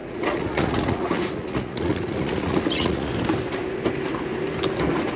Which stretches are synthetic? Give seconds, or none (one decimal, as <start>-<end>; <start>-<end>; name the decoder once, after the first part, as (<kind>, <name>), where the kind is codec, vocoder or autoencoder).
0.0-3.1 (vocoder, Vocos)